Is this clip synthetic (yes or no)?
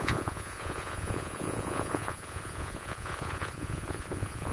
yes